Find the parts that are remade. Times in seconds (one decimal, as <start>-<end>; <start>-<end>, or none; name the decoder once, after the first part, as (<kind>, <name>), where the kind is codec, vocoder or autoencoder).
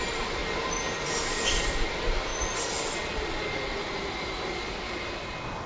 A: 0.0-0.4 (vocoder, BigVGAN v2); 1.3-2.3